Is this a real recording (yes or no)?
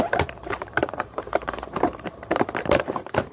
no